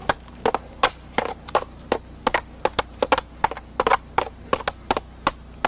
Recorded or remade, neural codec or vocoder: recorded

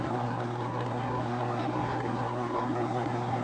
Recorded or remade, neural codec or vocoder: remade, codec, SNAC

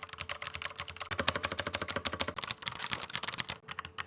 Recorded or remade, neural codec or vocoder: recorded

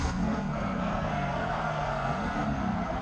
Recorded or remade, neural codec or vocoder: remade, codec, SNAC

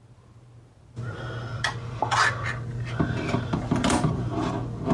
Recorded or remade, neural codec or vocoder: recorded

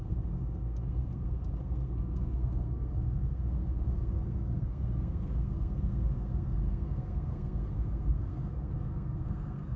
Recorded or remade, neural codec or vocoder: remade, codec, SNAC